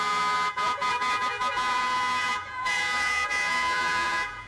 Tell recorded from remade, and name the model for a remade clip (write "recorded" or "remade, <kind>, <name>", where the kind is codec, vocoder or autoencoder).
remade, vocoder, Vocos